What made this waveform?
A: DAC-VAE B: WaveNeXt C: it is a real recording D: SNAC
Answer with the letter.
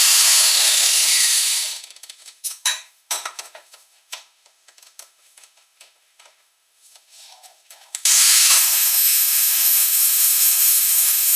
A